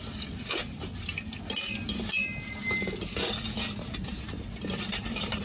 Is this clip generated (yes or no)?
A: no